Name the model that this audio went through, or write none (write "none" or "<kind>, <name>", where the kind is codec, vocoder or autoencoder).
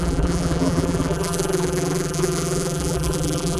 vocoder, BigVGAN v2